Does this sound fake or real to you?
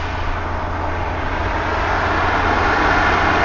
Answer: real